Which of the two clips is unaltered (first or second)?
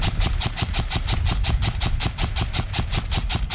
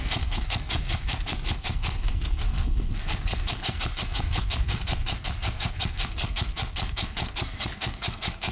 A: first